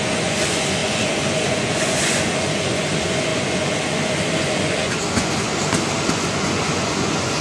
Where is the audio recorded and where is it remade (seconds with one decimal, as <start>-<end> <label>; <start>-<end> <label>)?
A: 0.0-5.5 remade; 5.5-6.1 recorded; 6.1-7.4 remade